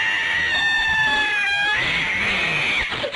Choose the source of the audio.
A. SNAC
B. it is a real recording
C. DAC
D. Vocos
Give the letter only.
B